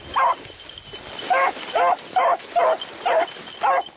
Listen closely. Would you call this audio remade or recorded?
recorded